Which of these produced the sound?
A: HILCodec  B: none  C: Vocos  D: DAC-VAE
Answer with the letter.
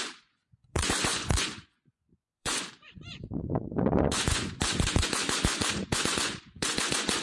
C